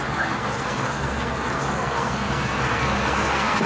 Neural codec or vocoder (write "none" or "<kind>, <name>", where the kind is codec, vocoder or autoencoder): codec, SNAC